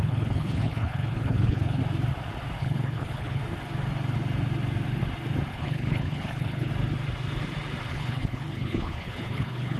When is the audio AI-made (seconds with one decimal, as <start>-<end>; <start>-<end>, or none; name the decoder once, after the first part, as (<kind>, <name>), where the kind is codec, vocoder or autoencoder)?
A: 0.0-1.8 (codec, HILCodec); 2.6-3.4; 5.5-6.7; 7.9-9.8